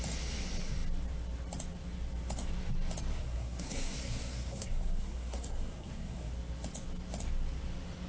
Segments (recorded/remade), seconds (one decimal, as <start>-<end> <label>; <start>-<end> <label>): 0.0-3.1 recorded; 3.1-6.3 remade; 6.3-8.1 recorded